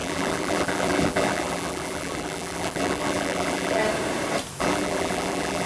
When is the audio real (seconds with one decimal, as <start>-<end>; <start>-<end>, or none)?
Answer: 3.8-4.6